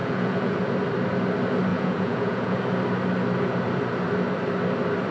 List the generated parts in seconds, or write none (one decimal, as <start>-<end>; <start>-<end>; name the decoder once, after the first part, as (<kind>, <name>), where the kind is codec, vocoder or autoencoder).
0.0-0.6 (vocoder, Vocos); 1.7-2.6